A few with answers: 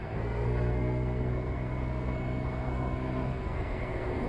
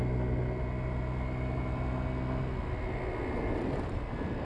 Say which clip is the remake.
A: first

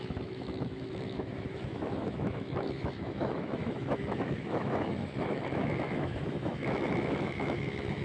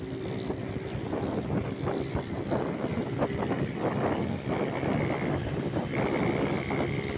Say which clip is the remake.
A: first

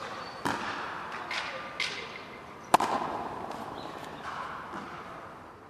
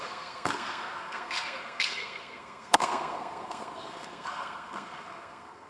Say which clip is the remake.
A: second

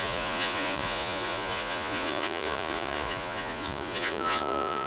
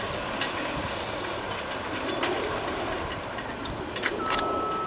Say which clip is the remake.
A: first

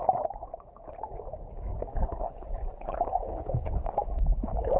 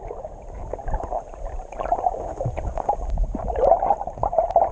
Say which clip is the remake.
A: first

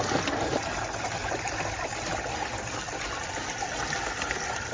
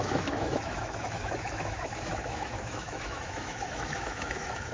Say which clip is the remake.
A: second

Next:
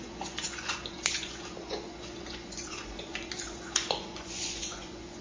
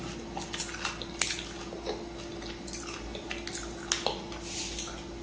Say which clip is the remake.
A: first